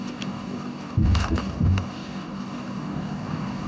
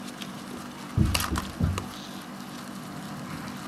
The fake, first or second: first